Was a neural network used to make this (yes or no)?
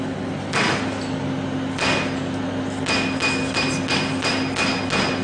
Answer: no